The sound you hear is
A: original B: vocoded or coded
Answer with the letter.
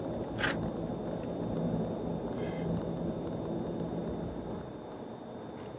A